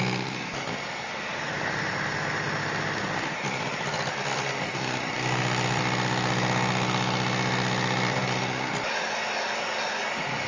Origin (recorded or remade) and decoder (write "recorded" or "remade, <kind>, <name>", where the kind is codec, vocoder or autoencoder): recorded